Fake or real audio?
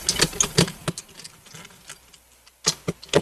real